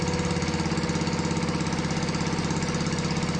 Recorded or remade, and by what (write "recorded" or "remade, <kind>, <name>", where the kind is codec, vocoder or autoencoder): recorded